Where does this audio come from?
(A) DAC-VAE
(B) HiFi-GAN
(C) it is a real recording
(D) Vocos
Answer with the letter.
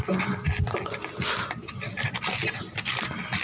C